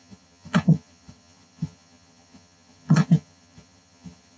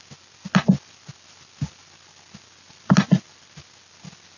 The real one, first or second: second